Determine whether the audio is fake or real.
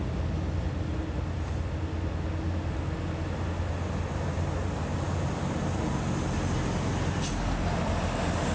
real